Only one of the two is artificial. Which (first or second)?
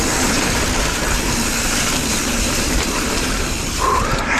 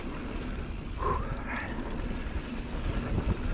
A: first